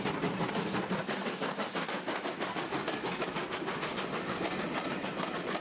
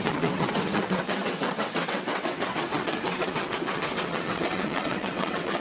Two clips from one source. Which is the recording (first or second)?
first